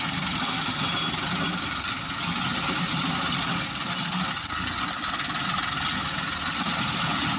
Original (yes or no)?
yes